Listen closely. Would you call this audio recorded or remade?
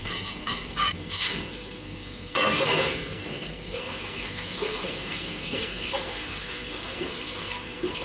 remade